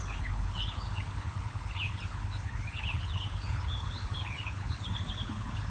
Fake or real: fake